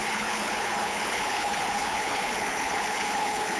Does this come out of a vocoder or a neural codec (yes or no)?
yes